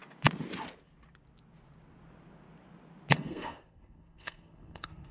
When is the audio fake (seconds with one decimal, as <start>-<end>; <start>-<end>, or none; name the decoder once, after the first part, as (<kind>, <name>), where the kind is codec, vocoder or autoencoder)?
3.1-5.1 (codec, SNAC)